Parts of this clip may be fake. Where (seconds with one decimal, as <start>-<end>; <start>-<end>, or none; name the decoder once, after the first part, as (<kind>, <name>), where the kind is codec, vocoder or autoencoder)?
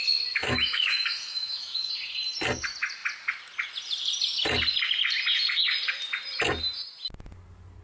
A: 0.4-1.9 (autoencoder, DAC-VAE)